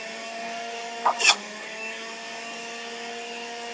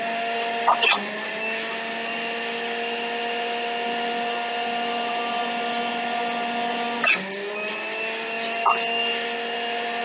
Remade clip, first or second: first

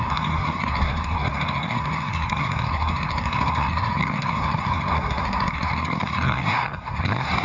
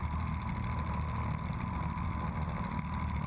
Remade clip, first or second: first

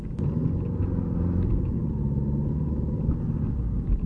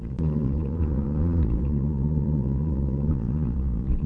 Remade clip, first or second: second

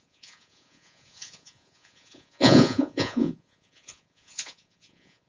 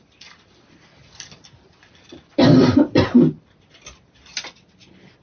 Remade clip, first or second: first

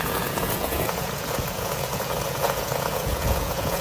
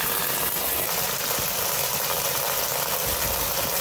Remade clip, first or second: first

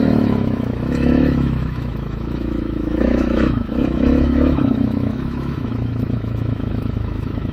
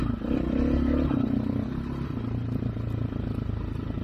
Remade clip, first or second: first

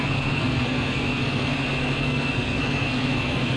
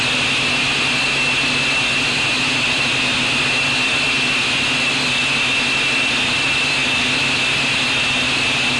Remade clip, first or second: first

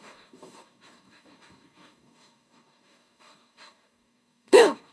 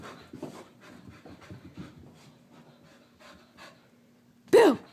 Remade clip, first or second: first